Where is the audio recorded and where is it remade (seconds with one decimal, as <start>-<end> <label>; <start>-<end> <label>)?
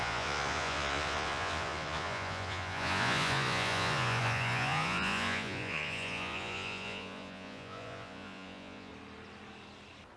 0.0-8.9 remade; 8.9-10.2 recorded